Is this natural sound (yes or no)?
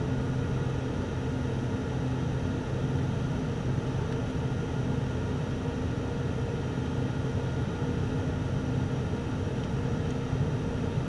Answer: yes